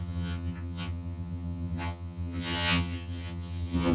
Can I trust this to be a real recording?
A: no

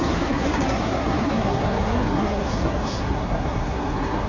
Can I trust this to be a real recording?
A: no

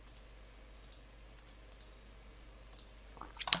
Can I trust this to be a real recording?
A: yes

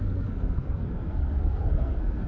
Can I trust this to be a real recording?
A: no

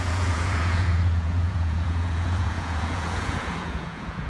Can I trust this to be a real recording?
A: no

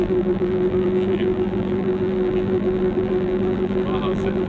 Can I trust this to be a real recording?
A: no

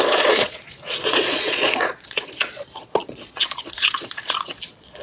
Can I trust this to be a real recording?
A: no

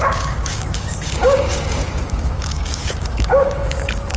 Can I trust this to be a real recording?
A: no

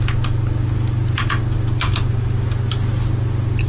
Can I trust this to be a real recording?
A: yes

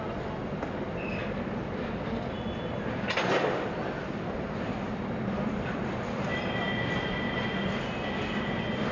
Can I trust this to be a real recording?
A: yes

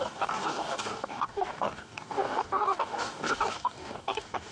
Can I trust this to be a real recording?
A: no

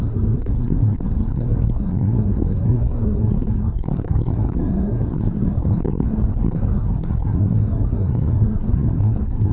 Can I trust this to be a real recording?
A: no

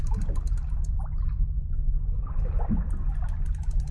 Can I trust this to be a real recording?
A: yes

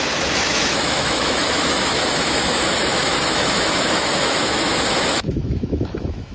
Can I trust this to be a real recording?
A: no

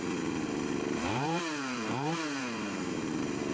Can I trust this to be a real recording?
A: no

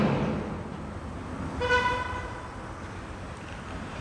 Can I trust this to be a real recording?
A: yes